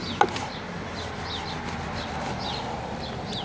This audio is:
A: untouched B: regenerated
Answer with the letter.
A